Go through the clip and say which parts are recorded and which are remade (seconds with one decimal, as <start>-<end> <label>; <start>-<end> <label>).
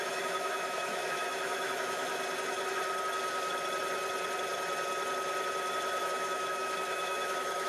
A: 0.0-2.1 remade; 2.1-6.0 recorded; 6.0-7.7 remade